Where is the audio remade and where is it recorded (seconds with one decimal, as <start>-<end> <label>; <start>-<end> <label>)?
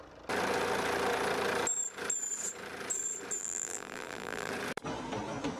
0.0-3.4 recorded; 3.4-4.5 remade; 4.5-5.6 recorded